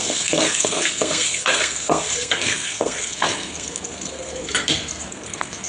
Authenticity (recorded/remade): remade